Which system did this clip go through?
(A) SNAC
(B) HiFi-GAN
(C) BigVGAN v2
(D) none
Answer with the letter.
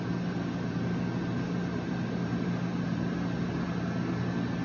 D